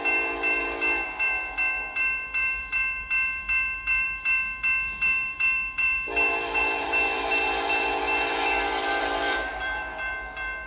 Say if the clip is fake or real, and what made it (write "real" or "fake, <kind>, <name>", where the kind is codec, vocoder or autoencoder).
fake, vocoder, BigVGAN v2